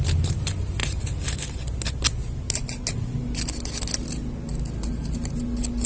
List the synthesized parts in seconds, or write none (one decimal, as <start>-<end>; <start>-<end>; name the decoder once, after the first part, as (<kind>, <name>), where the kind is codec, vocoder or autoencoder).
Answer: none